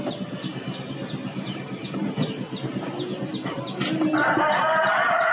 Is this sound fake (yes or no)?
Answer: no